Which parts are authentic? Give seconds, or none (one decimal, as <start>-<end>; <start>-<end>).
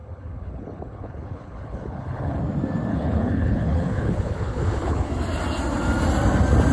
2.4-2.9; 5.1-6.7